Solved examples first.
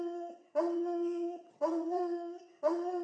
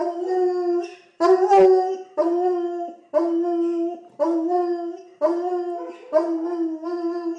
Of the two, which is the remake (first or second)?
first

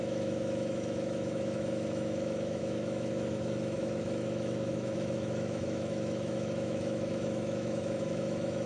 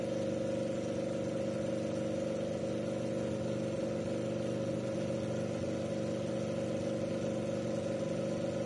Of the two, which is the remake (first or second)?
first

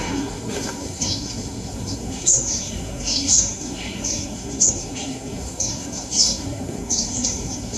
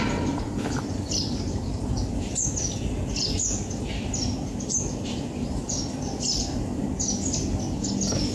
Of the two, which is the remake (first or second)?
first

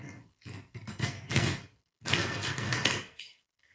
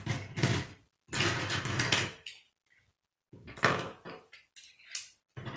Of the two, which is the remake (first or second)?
first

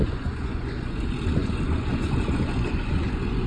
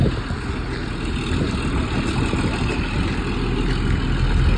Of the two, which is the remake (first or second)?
first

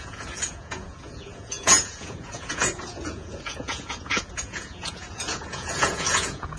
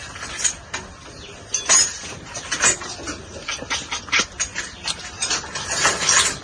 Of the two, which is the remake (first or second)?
first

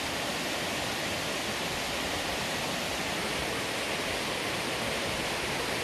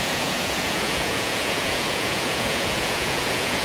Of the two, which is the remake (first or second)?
second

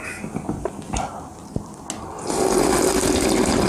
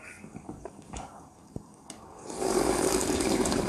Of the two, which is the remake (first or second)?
second